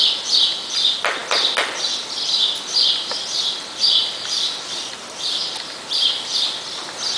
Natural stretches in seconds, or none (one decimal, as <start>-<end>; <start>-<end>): 0.0-4.0; 6.3-7.2